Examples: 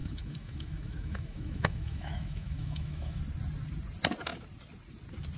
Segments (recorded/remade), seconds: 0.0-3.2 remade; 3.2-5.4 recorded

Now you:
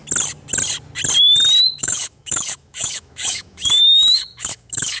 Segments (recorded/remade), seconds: 0.0-1.8 recorded; 1.8-5.0 remade